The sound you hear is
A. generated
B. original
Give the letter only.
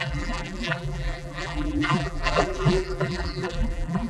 A